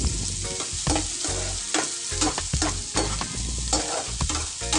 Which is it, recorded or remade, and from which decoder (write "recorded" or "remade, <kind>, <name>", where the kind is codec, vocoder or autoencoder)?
recorded